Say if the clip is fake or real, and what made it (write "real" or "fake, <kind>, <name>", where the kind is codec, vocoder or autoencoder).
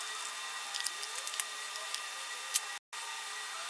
real